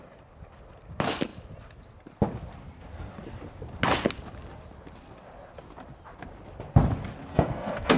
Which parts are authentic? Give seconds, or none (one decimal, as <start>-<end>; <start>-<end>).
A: 0.0-7.3